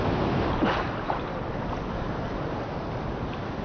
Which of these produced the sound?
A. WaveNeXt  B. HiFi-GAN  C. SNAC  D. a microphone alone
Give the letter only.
D